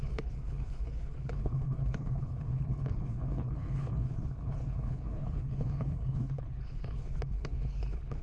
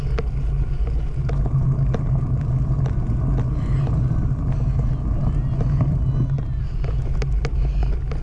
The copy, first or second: first